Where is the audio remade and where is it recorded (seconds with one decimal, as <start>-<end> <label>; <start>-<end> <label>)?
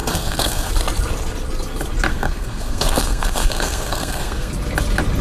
0.0-0.7 remade; 0.7-2.1 recorded; 2.1-4.5 remade; 4.5-5.2 recorded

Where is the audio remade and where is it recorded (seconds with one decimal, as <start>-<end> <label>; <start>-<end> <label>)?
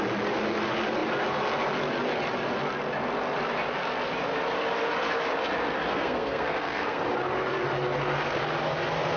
0.0-5.9 recorded; 5.9-7.0 remade; 7.0-9.2 recorded